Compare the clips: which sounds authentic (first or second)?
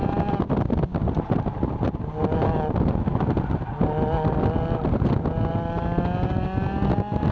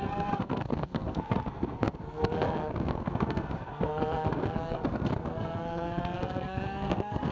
first